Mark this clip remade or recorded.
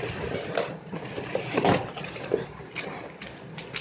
remade